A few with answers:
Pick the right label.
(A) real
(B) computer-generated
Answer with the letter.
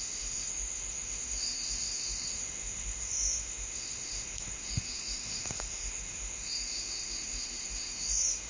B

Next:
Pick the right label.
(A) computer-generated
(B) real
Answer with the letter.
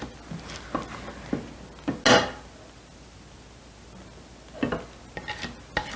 B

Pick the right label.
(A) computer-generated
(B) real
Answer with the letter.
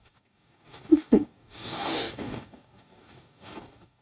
A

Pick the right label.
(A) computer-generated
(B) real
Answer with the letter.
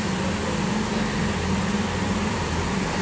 A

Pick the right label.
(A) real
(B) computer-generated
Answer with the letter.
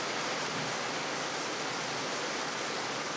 A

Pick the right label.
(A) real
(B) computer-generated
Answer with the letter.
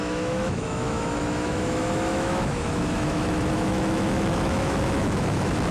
B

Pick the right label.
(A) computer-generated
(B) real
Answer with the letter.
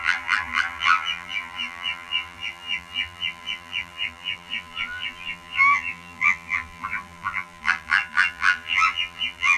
A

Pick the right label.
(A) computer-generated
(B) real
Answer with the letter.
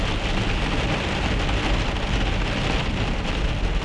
B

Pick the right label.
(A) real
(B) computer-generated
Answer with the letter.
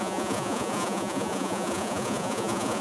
B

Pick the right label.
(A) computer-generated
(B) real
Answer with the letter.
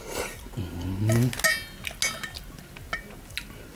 B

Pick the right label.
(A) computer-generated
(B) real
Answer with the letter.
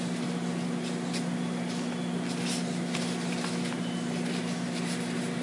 B